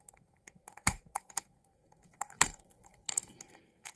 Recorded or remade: remade